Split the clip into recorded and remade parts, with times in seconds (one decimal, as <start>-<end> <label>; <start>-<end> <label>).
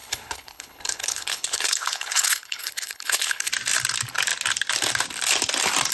0.0-3.5 remade; 3.5-5.9 recorded